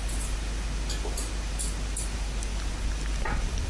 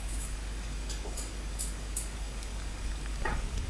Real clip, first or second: first